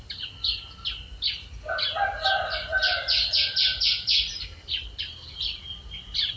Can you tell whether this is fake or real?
real